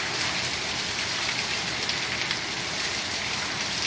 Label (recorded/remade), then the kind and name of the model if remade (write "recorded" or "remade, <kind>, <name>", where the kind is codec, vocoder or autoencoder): recorded